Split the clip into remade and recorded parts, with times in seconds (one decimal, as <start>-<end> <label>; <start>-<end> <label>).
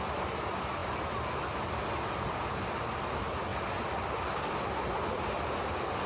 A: 0.0-6.1 recorded